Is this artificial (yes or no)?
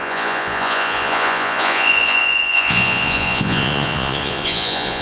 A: yes